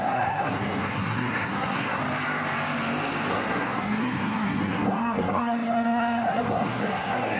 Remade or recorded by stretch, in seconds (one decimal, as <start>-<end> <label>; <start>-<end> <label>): 0.0-2.0 remade; 2.0-3.3 recorded; 3.3-7.4 remade